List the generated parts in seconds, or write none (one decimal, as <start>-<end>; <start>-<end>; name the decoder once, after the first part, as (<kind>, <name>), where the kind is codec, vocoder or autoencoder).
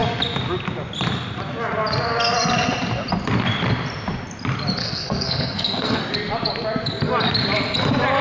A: 4.8-6.0 (codec, SNAC)